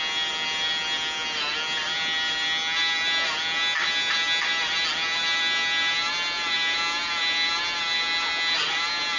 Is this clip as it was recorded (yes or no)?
yes